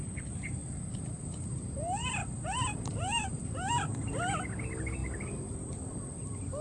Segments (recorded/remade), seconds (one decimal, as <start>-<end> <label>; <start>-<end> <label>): 0.0-0.6 recorded; 0.6-4.6 remade; 4.6-6.6 recorded